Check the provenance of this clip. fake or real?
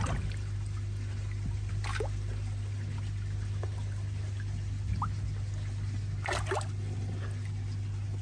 real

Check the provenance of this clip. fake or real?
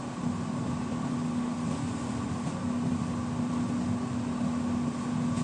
real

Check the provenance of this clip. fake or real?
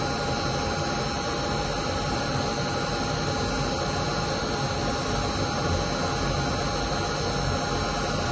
real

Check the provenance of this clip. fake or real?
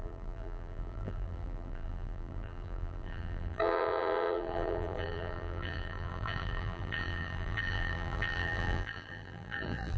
fake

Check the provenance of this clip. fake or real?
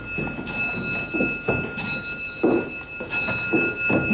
real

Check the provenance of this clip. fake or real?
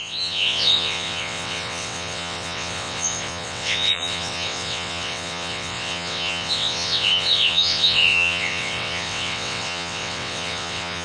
fake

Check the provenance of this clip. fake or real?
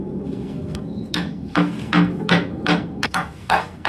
fake